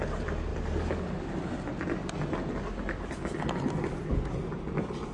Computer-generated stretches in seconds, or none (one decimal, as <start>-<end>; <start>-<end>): none